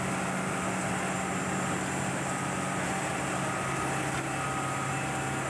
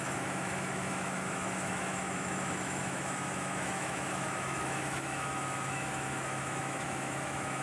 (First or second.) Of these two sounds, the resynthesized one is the second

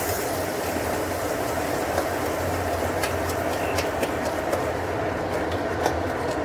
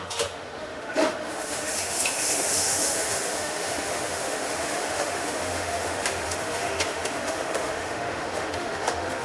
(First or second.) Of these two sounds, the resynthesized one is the second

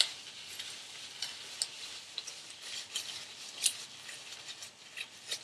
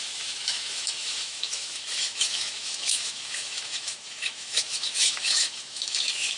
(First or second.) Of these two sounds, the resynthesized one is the second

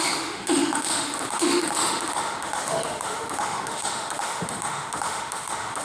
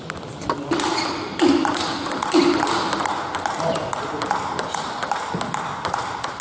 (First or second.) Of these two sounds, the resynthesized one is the first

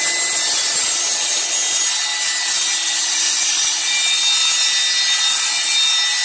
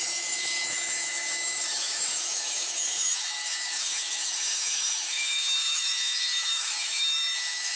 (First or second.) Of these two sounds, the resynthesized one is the second